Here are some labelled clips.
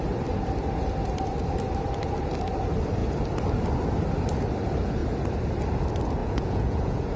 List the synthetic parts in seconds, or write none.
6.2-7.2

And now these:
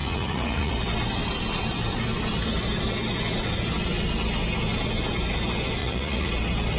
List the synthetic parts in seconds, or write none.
0.0-0.7; 5.8-6.3